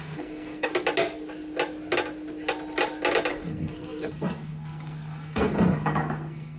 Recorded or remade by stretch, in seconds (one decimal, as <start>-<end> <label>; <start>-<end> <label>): 0.0-0.7 remade; 0.7-3.3 recorded; 3.3-6.6 remade